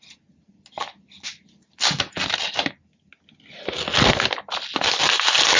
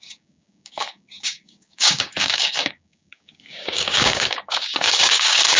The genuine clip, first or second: first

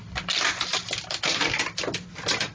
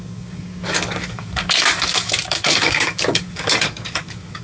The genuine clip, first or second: first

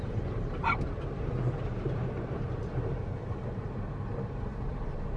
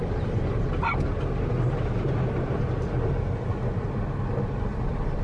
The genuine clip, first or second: second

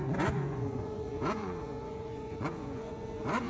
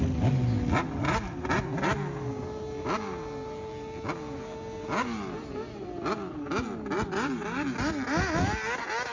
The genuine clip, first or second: second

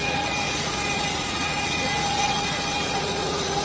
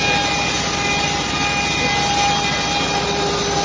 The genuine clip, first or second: second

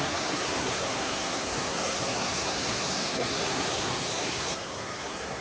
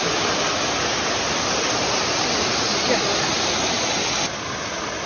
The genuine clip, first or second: second